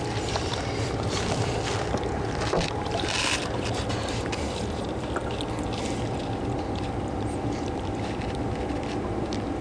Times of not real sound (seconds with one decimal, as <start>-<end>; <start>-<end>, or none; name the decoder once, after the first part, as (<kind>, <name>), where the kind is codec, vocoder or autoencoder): 0.0-5.2 (vocoder, BigVGAN v2); 5.9-9.6